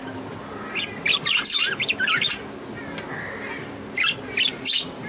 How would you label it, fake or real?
real